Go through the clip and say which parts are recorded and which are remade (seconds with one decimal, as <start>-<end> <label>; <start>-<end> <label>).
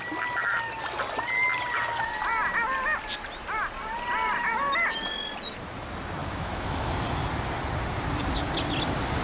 0.0-6.2 recorded; 6.2-6.9 remade; 6.9-9.2 recorded